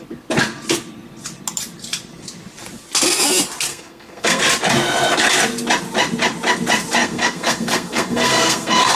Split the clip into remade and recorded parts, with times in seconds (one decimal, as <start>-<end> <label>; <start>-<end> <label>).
0.0-3.7 recorded; 3.7-4.4 remade; 4.4-7.0 recorded; 7.0-8.9 remade